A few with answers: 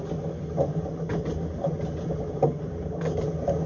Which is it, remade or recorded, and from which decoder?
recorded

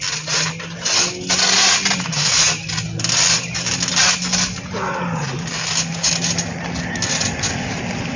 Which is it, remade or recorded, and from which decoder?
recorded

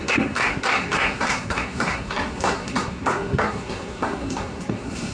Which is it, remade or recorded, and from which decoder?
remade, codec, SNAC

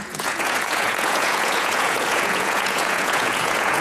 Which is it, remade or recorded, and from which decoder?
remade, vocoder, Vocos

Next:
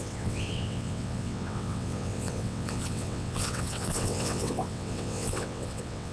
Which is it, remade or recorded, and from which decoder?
remade, vocoder, WaveNeXt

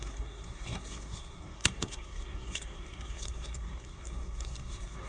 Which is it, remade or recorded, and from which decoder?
remade, codec, SNAC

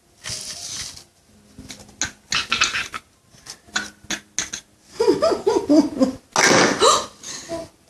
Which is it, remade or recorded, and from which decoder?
recorded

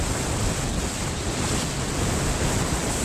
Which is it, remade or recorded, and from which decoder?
recorded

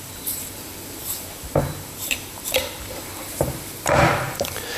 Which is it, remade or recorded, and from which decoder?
remade, vocoder, BigVGAN v2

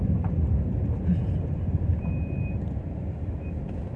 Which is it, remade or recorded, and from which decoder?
recorded